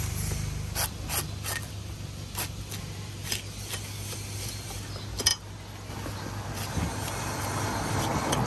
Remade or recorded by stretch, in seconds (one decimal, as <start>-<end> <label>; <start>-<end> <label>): 0.0-8.5 recorded